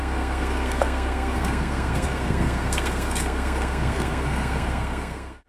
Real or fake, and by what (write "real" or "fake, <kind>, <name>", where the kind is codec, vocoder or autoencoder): fake, codec, SNAC